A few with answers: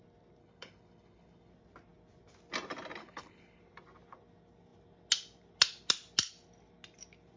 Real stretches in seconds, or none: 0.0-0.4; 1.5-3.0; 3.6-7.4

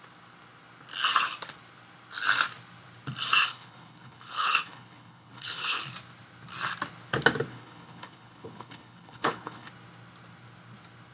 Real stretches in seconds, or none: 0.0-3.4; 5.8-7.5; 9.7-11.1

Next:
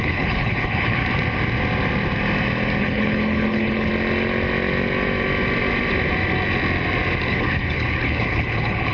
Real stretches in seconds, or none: 1.0-2.8; 3.9-7.3

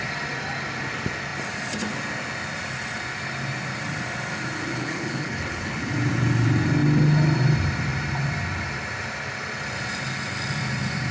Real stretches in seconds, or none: 0.0-4.7; 5.9-11.1

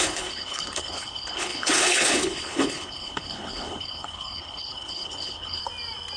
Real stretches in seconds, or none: 5.6-6.2

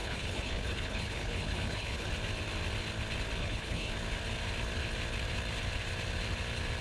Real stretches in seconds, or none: 2.1-3.4; 3.9-6.8

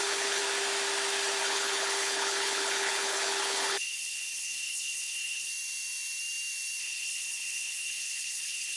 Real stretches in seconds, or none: 0.4-1.4; 5.5-6.8